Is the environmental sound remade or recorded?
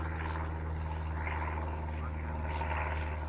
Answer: recorded